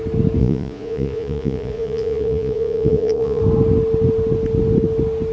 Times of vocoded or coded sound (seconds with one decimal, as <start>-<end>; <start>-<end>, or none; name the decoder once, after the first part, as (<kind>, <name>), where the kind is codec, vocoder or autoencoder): 0.4-3.4 (vocoder, Vocos)